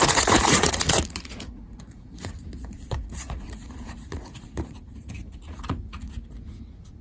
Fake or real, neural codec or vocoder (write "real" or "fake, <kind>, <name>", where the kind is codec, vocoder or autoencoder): fake, vocoder, Vocos